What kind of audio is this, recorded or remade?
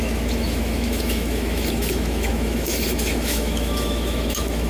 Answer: remade